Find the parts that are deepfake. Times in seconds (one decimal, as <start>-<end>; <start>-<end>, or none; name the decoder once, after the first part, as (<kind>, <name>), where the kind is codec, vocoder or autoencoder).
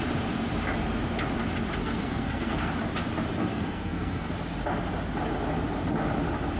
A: 1.8-2.7 (codec, SNAC); 3.4-4.3